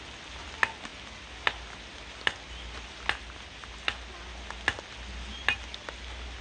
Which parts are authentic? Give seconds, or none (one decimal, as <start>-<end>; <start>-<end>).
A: 0.0-6.4